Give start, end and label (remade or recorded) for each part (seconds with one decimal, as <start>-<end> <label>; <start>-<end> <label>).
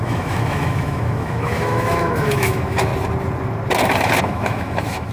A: 0.0-2.9 remade; 2.9-4.2 recorded; 4.2-5.1 remade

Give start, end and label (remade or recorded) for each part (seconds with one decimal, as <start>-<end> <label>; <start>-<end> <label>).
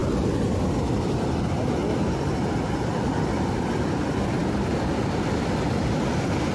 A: 0.0-6.5 recorded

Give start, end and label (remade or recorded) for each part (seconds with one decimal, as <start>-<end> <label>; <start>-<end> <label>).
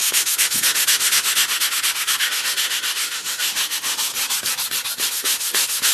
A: 0.0-4.1 remade; 4.1-5.1 recorded; 5.1-5.9 remade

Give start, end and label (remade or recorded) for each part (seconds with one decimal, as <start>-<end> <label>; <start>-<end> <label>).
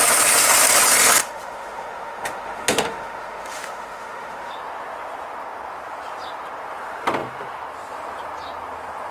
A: 0.0-1.2 recorded; 1.2-4.5 remade; 4.5-9.1 recorded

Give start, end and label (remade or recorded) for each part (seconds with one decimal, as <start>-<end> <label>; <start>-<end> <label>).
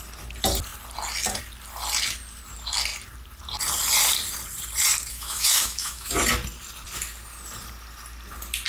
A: 0.0-5.1 recorded; 5.1-6.1 remade; 6.1-8.7 recorded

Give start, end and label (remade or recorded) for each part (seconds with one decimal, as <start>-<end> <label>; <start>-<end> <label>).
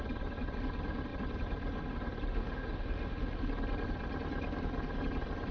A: 0.0-2.3 recorded; 2.3-3.5 remade; 3.5-5.5 recorded